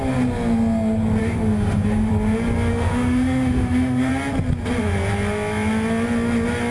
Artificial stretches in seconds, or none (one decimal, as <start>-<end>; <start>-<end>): 1.2-2.1; 2.7-4.1